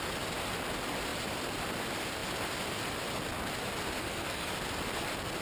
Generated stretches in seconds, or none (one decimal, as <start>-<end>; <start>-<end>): 4.0-4.5